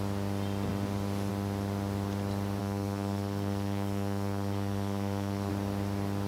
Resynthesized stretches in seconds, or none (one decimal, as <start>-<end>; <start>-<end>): 2.6-5.5